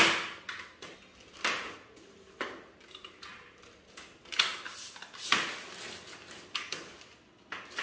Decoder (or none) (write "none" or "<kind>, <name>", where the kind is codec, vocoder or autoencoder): none